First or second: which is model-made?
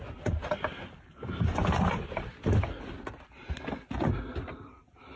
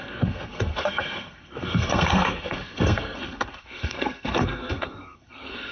second